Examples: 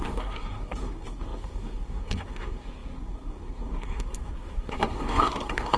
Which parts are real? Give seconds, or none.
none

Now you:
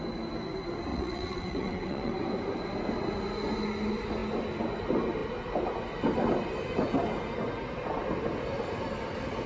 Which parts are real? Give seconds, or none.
0.0-0.9; 2.1-9.5